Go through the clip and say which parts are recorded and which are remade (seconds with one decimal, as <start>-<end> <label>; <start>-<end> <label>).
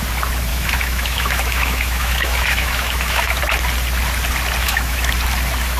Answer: 0.0-0.5 recorded; 0.5-3.4 remade; 3.4-4.6 recorded; 4.6-5.1 remade; 5.1-5.8 recorded